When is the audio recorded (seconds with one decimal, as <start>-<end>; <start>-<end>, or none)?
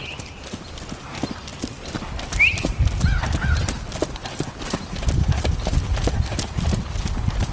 0.0-7.5